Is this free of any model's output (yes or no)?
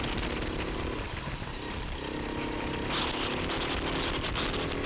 yes